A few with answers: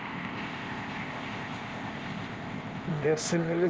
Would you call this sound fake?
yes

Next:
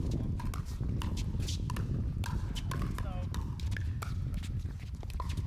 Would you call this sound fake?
no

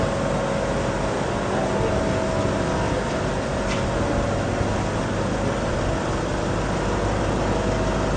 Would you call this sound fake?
no